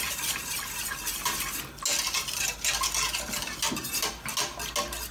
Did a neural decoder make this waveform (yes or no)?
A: no